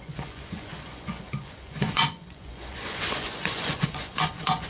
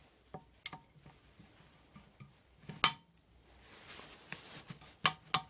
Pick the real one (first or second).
second